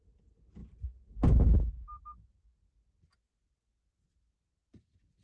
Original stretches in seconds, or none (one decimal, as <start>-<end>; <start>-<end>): 0.0-5.2